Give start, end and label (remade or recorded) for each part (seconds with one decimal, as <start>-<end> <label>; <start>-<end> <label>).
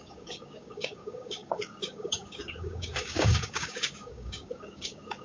0.0-5.2 remade